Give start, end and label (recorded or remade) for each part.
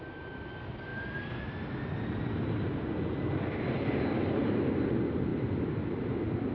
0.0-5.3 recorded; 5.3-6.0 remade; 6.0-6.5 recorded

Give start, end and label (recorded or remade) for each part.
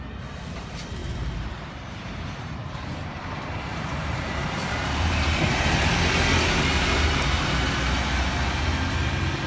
0.0-1.0 recorded; 1.0-5.5 remade; 5.5-9.5 recorded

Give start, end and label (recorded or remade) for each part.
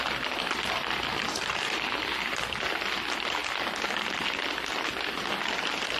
0.0-6.0 recorded